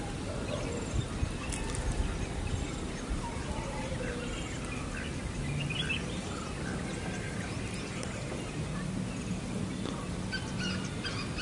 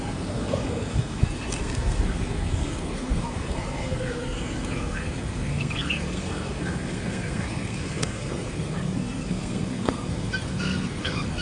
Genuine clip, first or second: first